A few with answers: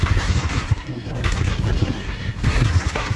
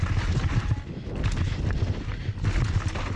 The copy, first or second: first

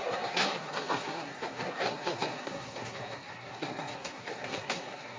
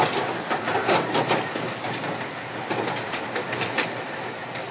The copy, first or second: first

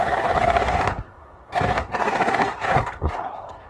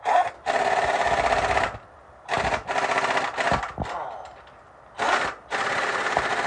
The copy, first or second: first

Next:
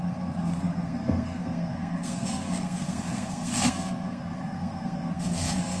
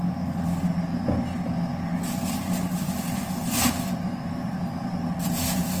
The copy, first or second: first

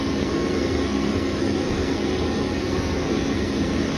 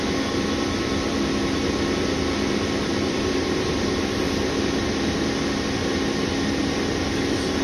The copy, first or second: first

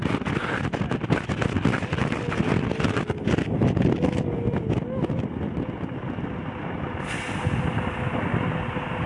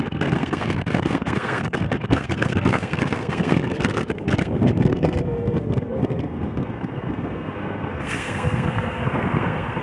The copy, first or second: second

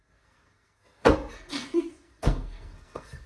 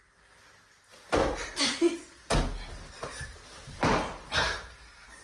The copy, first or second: first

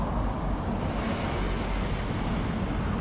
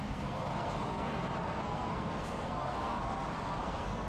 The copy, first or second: second